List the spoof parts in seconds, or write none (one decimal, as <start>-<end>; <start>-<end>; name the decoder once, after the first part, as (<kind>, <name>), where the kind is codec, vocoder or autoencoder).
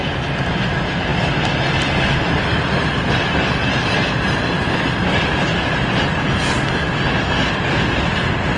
none